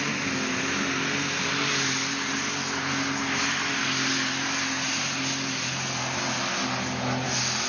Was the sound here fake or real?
real